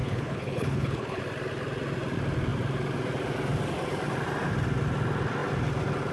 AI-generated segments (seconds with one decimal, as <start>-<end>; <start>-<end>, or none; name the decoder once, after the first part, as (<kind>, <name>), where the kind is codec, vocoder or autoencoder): 0.0-1.2 (codec, HILCodec)